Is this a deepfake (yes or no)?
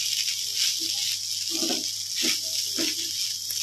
no